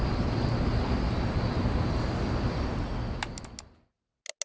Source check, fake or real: real